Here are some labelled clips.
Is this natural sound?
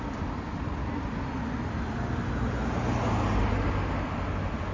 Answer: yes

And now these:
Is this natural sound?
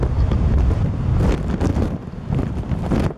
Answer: yes